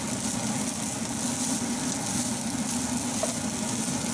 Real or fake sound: real